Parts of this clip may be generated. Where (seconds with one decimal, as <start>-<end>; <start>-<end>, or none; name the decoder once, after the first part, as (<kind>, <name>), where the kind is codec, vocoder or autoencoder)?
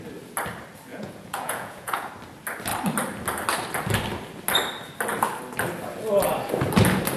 0.9-2.1 (vocoder, Vocos)